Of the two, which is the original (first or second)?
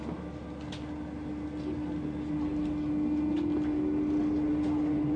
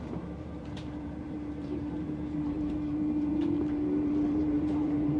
first